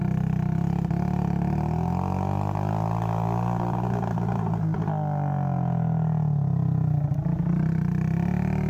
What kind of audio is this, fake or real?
real